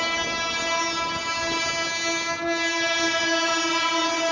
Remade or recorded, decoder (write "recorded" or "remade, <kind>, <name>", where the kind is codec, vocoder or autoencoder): recorded